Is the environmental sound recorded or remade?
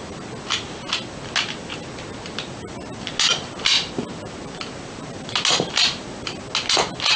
recorded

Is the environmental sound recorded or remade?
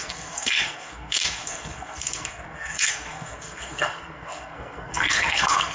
remade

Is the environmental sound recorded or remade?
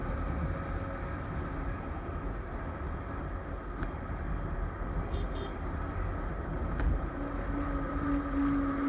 recorded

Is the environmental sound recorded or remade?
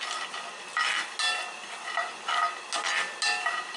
recorded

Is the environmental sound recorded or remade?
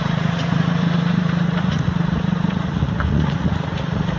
remade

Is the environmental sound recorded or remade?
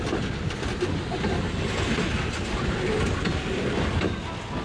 recorded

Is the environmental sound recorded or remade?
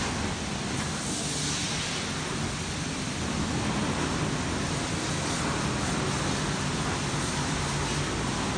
recorded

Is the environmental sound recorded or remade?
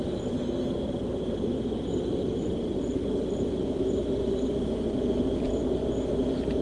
recorded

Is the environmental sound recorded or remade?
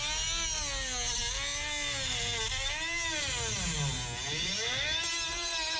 recorded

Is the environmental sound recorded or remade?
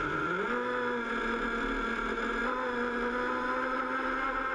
recorded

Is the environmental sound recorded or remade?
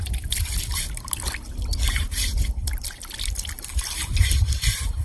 recorded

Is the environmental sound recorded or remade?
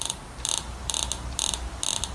recorded